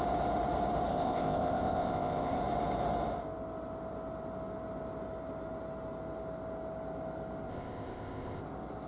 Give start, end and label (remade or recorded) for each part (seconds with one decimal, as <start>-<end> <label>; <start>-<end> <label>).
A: 0.0-0.9 recorded; 0.9-2.4 remade; 2.4-7.5 recorded; 7.5-8.4 remade; 8.4-8.9 recorded